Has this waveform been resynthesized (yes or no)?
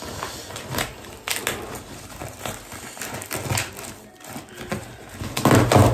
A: no